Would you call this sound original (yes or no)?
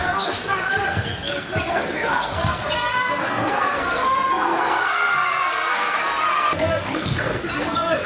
no